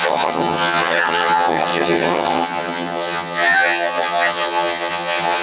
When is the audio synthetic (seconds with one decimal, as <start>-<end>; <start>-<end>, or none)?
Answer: 0.0-5.4